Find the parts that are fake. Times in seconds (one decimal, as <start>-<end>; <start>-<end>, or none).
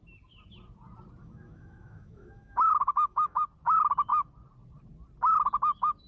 1.2-3.4